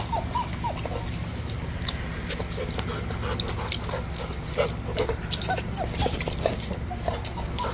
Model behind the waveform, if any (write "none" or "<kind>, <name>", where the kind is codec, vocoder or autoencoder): none